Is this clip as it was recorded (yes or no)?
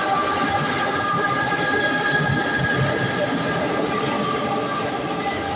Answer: yes